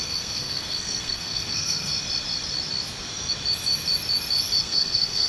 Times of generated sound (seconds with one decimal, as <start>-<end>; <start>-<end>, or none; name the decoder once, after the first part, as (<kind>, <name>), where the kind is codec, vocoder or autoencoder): 0.0-1.9 (codec, SNAC); 4.6-5.3